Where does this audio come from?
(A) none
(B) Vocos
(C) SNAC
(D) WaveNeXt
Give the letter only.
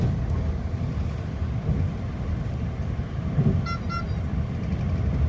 A